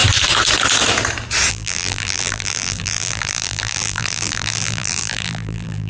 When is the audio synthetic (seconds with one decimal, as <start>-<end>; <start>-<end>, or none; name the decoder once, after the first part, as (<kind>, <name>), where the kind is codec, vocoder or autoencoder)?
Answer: 1.5-5.9 (vocoder, BigVGAN v2)